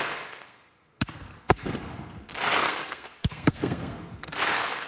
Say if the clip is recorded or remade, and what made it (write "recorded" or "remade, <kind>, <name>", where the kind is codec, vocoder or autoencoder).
remade, codec, SNAC